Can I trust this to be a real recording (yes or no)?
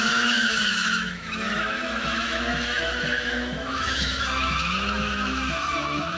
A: no